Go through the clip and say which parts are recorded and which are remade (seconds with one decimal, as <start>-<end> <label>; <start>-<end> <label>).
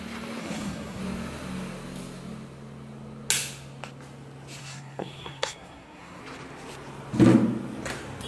0.0-0.4 recorded; 0.4-1.0 remade; 1.0-4.6 recorded; 4.6-6.2 remade; 6.2-8.3 recorded